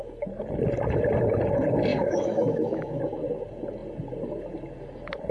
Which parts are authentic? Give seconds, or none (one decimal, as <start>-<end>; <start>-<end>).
0.0-1.9; 3.0-5.3